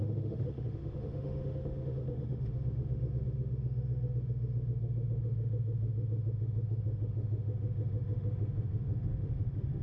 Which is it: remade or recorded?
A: remade